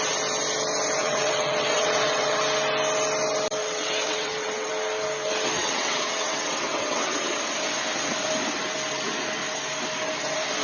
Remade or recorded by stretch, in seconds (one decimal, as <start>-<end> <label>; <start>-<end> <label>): 0.0-1.0 recorded; 1.0-2.4 remade; 2.4-3.6 recorded; 3.6-4.7 remade; 4.7-5.6 recorded; 5.6-7.4 remade; 7.4-10.6 recorded